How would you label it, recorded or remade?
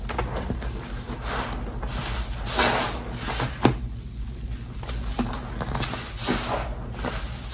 recorded